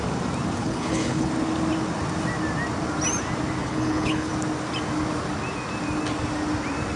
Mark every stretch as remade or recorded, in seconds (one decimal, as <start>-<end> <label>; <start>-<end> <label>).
0.0-0.6 recorded; 0.6-1.3 remade; 1.3-3.6 recorded; 3.6-4.3 remade; 4.3-7.0 recorded